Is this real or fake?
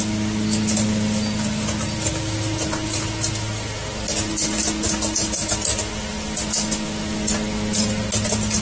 real